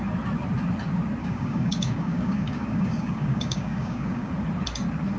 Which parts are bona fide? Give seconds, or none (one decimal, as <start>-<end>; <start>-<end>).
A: 0.0-1.2; 4.3-5.2